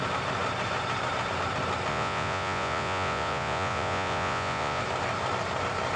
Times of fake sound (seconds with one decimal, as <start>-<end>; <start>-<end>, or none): 1.9-4.8